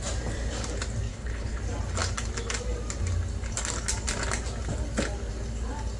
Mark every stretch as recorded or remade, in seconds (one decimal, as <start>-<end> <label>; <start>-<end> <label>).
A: 0.0-1.1 recorded; 1.1-1.6 remade; 1.6-6.0 recorded